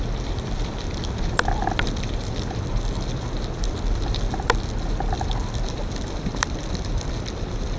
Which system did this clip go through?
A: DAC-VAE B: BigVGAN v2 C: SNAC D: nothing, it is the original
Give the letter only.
B